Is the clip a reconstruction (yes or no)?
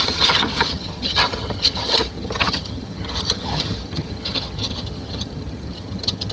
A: yes